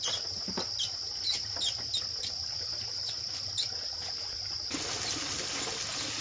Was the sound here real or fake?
real